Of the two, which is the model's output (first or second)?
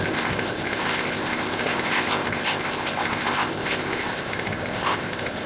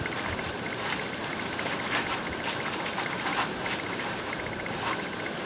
first